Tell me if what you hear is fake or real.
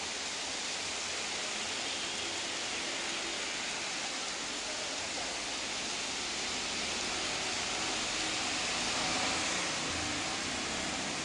real